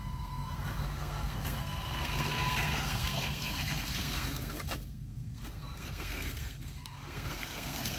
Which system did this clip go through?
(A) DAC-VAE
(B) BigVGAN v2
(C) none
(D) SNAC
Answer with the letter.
D